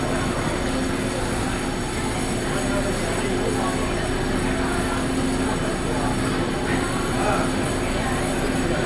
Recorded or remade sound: recorded